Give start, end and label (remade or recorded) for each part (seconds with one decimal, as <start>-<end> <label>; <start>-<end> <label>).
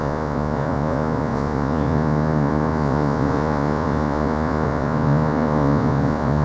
0.0-6.4 remade